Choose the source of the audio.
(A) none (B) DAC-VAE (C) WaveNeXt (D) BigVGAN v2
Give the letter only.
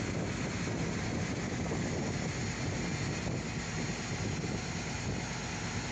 A